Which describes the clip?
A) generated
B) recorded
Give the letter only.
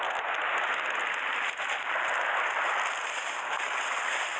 B